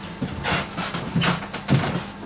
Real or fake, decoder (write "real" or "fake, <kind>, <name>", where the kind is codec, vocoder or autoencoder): real